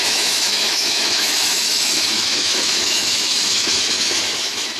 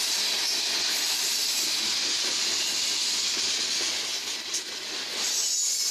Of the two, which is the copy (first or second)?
first